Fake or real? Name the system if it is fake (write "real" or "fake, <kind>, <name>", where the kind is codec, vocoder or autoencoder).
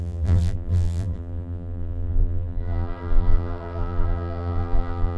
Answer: fake, vocoder, BigVGAN v2